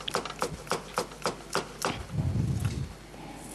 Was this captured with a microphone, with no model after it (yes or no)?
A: yes